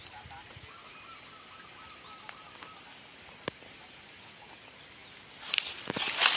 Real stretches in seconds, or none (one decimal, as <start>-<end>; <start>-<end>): 0.0-6.4